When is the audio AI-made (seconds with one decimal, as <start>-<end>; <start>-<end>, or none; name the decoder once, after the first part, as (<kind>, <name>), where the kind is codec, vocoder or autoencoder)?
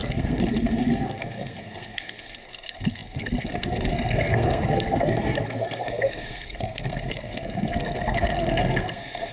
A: 0.0-9.3 (codec, SNAC)